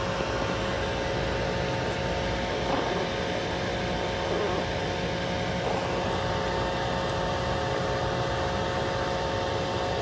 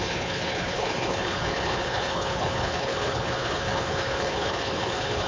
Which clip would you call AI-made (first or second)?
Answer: second